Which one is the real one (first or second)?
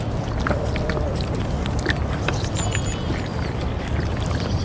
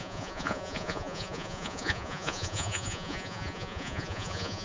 first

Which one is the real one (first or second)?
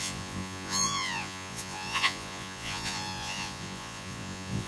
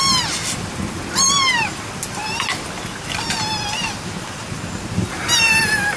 second